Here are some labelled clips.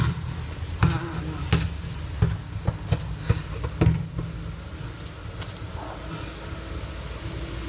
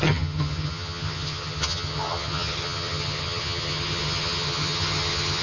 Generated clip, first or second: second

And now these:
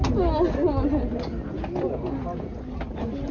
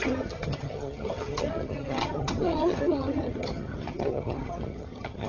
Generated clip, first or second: second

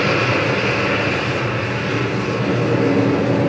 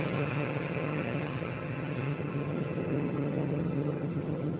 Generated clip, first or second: second